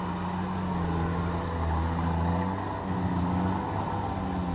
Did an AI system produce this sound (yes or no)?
no